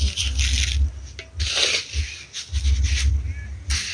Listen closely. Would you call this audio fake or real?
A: real